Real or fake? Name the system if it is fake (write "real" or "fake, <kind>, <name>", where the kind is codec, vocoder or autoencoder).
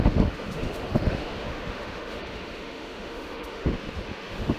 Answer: fake, autoencoder, DAC-VAE